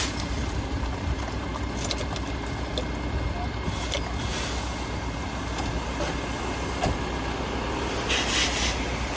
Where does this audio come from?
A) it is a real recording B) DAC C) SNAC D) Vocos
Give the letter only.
A